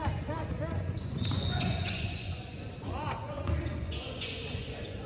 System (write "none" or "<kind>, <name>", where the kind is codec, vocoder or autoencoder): vocoder, Vocos